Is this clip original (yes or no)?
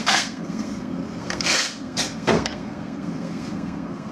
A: no